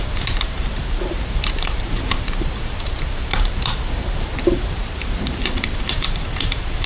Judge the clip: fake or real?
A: fake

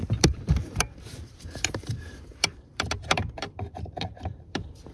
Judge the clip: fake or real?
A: fake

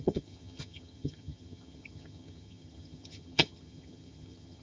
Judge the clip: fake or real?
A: fake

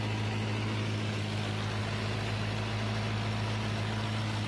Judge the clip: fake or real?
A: real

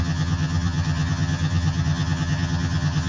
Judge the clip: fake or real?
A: fake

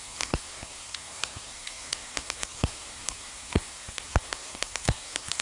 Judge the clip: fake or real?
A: fake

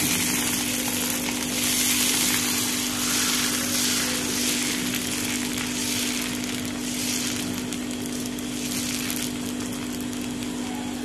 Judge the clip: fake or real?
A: real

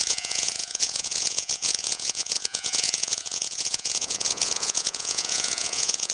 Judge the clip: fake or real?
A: fake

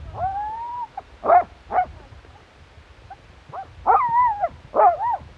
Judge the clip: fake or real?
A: real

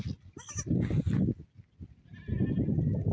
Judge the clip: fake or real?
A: real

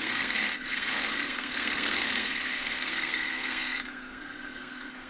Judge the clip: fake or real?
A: fake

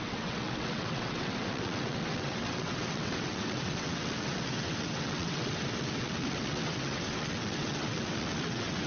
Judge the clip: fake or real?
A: fake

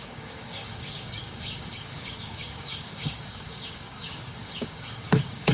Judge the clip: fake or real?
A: fake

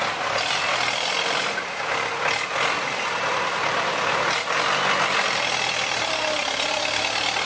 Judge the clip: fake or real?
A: real